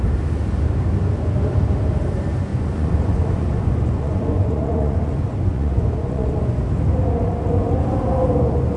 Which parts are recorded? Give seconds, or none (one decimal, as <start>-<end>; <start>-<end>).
0.0-2.5; 6.6-8.8